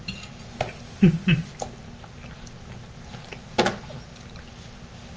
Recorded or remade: recorded